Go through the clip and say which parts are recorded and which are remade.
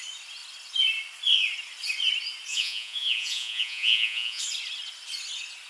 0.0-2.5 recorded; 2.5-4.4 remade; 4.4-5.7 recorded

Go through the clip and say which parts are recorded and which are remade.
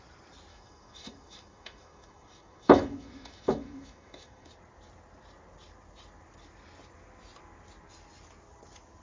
0.0-0.5 recorded; 0.5-4.5 remade; 4.5-9.0 recorded